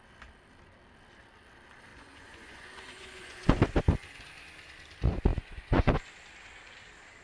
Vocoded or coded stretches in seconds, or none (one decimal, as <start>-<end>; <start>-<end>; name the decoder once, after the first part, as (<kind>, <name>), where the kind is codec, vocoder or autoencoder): 1.9-3.6 (vocoder, Vocos); 5.3-5.9

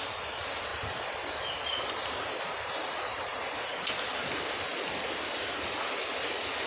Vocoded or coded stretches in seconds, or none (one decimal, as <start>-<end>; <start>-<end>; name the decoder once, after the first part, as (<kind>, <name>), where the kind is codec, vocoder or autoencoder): none

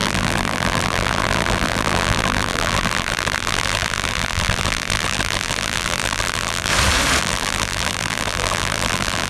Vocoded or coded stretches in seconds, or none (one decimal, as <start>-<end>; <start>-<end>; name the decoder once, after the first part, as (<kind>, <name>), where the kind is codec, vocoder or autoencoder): 0.0-6.7 (vocoder, BigVGAN v2); 7.2-9.3

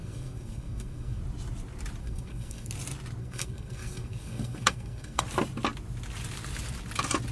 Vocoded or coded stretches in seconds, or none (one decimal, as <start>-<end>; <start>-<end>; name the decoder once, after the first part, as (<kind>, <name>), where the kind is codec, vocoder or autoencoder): 0.0-1.2 (codec, SNAC); 2.0-2.7; 3.2-5.2

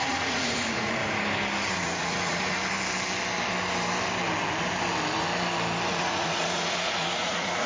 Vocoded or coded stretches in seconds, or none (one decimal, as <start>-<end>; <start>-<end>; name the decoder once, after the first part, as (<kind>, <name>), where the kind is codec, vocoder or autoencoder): 0.0-1.0 (vocoder, Vocos); 1.7-2.6; 5.9-7.7